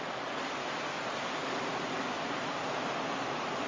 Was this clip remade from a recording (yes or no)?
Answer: no